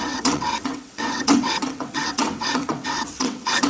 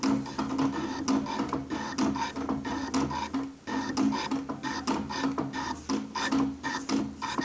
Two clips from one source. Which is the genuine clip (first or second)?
second